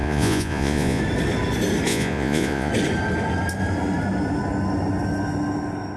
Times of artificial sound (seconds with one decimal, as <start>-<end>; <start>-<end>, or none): 0.0-1.0; 1.9-2.7